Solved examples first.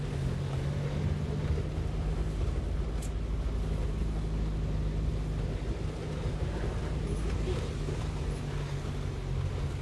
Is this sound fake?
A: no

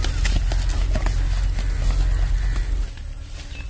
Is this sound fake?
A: no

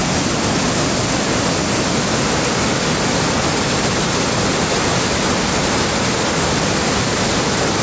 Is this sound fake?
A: no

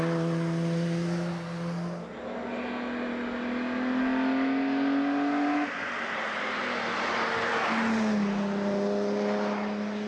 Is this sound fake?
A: no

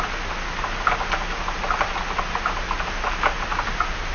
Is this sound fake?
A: no